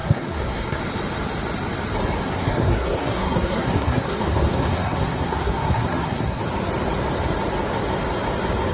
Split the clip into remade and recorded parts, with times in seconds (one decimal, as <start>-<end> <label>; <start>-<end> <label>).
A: 0.0-0.8 remade; 0.8-2.2 recorded; 2.2-6.4 remade; 6.4-8.7 recorded